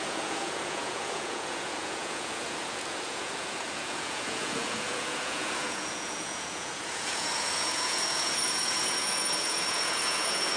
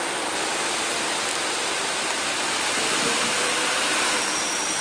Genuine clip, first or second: second